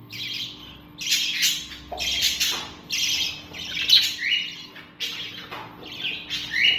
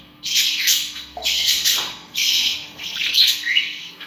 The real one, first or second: first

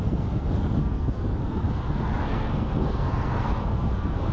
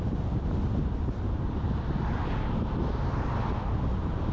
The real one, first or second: second